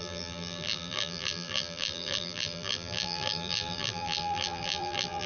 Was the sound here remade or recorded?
remade